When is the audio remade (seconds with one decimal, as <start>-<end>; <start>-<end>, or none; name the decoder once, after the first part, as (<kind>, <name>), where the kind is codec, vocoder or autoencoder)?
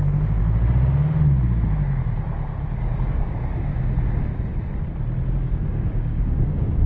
0.0-0.4 (codec, DAC); 3.1-3.7; 5.3-6.9